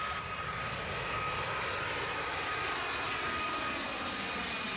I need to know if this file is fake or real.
real